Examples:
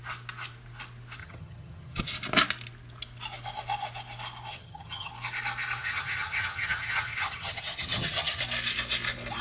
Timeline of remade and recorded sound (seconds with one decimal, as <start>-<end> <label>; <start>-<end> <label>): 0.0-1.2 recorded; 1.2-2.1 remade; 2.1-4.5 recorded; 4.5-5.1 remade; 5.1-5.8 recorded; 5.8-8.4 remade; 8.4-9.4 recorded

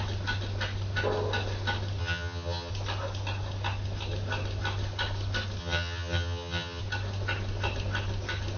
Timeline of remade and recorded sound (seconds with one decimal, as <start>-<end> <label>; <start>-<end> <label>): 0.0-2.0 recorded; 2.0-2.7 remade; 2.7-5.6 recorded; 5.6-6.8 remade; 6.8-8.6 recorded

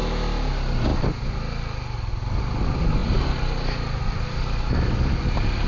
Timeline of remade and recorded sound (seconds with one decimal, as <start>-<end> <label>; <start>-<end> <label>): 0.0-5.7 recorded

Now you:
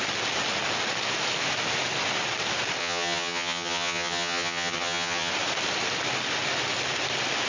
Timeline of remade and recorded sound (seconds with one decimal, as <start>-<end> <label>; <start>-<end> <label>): 0.0-2.8 recorded; 2.8-5.3 remade; 5.3-7.5 recorded

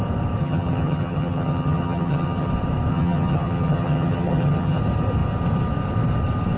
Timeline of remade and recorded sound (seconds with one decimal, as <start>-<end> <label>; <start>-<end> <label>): 0.0-0.4 recorded; 0.4-2.5 remade; 2.5-2.9 recorded; 2.9-4.8 remade; 4.8-6.6 recorded

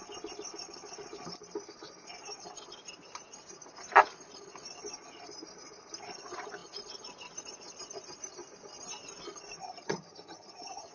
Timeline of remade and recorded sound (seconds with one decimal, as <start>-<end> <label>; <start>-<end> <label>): 0.0-9.6 recorded; 9.6-10.9 remade

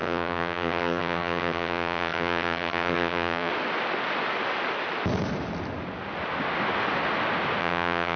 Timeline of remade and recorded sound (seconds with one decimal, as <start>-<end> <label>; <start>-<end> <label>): 0.0-3.5 remade; 3.5-7.6 recorded; 7.6-8.2 remade